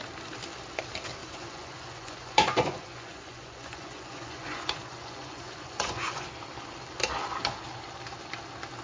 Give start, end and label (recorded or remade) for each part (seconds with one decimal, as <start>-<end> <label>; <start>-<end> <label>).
0.0-1.2 recorded; 1.2-6.3 remade; 6.3-8.8 recorded